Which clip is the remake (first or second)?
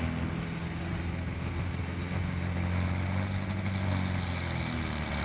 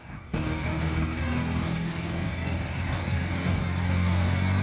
second